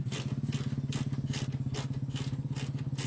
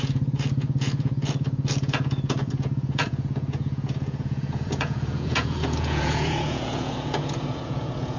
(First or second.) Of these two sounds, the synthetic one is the second